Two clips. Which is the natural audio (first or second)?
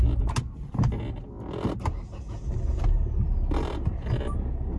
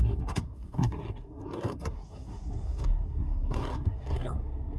first